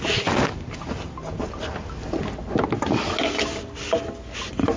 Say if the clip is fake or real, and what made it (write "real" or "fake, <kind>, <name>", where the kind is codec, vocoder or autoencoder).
real